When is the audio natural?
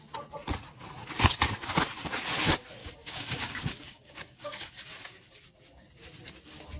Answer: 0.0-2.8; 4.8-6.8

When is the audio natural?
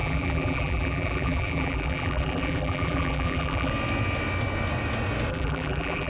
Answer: 3.7-5.3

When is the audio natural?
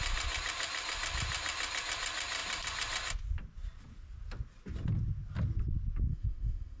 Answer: 0.0-6.1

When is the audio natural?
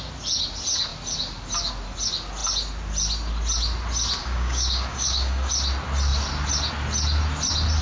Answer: 0.0-4.2; 5.5-7.8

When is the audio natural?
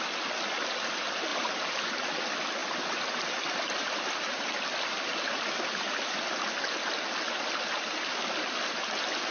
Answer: 0.0-1.3; 1.9-9.3